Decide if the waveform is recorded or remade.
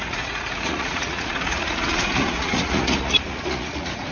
remade